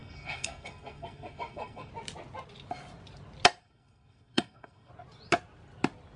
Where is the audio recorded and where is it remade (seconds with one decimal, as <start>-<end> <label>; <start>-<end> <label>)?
0.0-1.9 remade; 1.9-3.6 recorded; 3.6-4.9 remade; 4.9-6.2 recorded